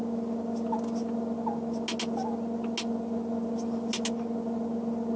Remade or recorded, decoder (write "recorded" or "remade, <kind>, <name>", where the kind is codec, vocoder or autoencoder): recorded